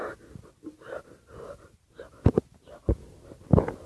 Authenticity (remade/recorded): recorded